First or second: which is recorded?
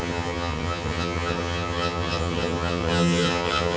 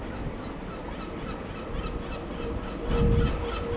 second